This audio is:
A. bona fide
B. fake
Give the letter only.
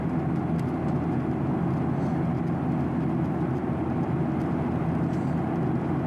A